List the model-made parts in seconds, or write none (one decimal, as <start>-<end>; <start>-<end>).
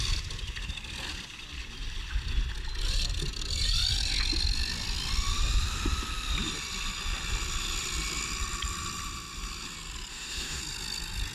10.1-10.6